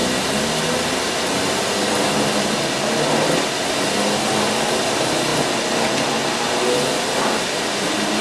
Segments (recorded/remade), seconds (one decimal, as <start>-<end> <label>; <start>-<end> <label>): 0.0-8.2 recorded